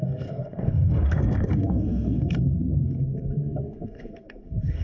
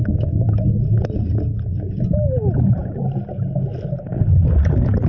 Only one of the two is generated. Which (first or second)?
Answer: first